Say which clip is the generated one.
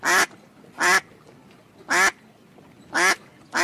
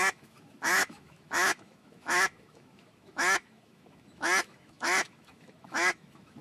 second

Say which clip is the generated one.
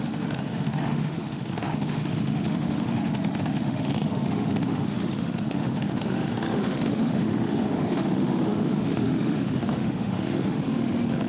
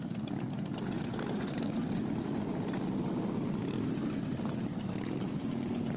first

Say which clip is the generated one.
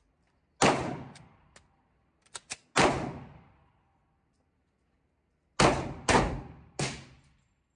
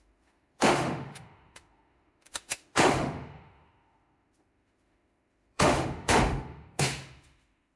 second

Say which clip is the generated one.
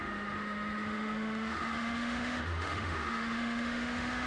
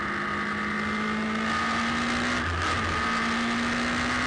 first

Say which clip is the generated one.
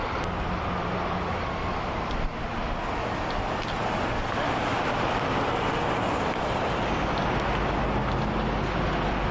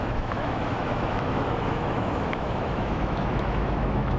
second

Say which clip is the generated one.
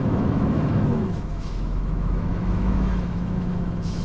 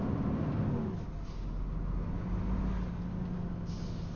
first